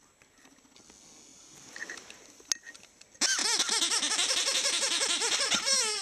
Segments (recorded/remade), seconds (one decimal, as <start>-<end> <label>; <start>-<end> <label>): 0.0-1.3 recorded; 1.3-2.2 remade; 2.2-3.4 recorded; 3.4-5.4 remade; 5.4-6.0 recorded